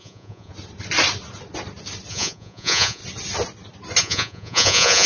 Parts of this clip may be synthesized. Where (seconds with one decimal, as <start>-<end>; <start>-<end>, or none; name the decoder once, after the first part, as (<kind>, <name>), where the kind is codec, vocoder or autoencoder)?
0.0-0.5 (vocoder, Vocos); 2.1-3.0; 4.0-5.1